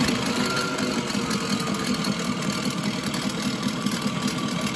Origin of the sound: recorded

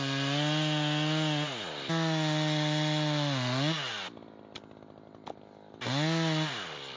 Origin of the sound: recorded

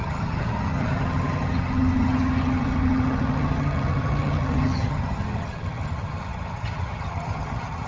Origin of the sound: remade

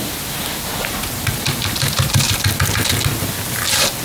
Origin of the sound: recorded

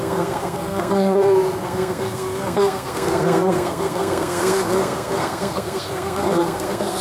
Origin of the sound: remade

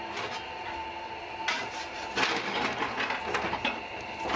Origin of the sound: recorded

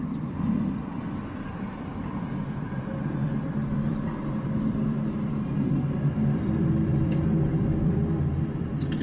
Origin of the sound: remade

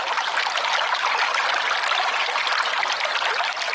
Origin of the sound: recorded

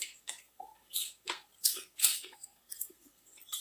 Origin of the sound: remade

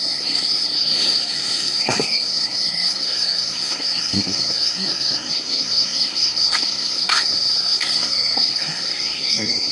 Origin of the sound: remade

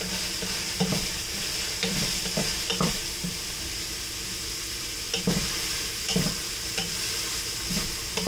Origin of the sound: remade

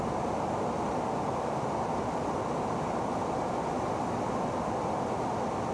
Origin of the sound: recorded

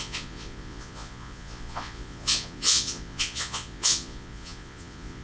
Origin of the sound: remade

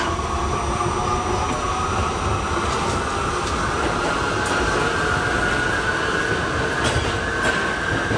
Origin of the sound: recorded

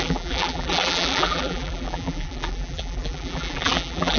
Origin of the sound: remade